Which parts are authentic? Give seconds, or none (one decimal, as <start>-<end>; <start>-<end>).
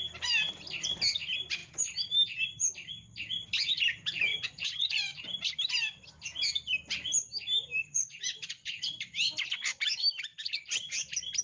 0.0-4.3; 5.2-7.8; 8.7-11.4